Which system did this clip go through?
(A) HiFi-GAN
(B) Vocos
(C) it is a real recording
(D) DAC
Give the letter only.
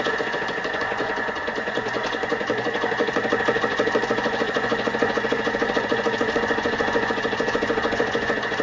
B